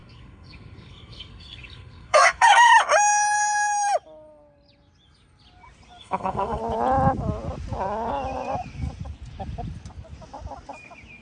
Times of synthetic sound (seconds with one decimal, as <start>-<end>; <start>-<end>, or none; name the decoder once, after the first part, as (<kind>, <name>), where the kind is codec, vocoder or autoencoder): 0.0-2.7 (codec, SNAC); 6.0-6.6